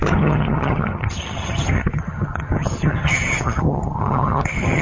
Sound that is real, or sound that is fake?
fake